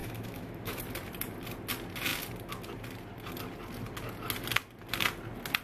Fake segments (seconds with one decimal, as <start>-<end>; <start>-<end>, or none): 0.0-0.8